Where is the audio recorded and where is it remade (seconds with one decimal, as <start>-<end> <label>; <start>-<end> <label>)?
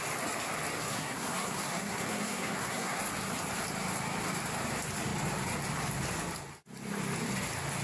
0.0-0.9 recorded; 0.9-3.0 remade; 3.0-7.8 recorded